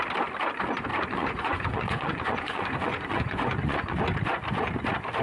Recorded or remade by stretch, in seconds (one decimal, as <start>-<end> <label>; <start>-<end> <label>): 0.0-0.9 recorded; 0.9-4.0 remade; 4.0-5.2 recorded